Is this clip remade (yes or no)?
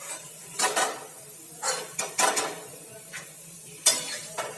yes